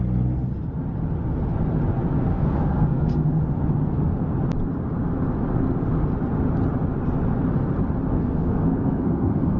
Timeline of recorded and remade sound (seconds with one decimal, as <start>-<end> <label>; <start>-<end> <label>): 0.0-2.3 recorded; 2.3-3.4 remade; 3.4-8.2 recorded; 8.2-9.6 remade